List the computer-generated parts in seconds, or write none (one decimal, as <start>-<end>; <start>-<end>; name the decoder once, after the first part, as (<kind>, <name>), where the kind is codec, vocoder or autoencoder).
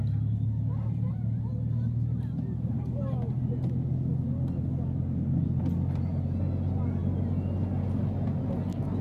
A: none